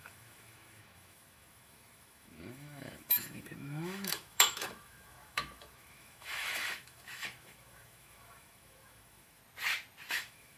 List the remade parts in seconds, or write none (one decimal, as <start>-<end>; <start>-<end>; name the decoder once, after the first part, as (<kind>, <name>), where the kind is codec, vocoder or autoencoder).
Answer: 0.0-9.4 (autoencoder, DAC-VAE); 10.1-10.6